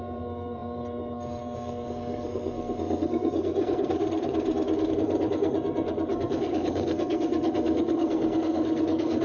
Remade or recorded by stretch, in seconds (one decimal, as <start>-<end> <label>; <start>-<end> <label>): 0.0-9.2 remade